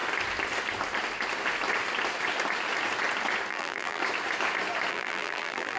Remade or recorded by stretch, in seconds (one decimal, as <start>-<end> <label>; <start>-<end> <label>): 0.0-3.5 recorded; 3.5-4.0 remade; 4.0-4.9 recorded; 4.9-5.8 remade